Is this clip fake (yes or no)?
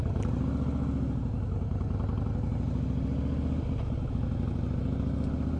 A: no